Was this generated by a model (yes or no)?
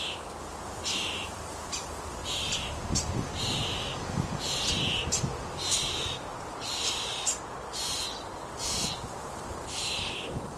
no